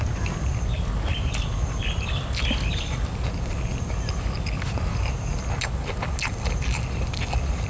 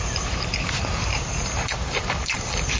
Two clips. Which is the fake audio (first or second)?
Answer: second